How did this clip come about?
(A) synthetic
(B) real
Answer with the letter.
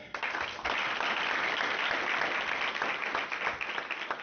B